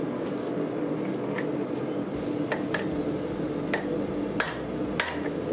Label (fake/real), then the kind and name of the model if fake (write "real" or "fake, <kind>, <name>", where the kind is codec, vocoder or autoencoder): real